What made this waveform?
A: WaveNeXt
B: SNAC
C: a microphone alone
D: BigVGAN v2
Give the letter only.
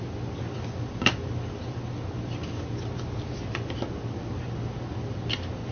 C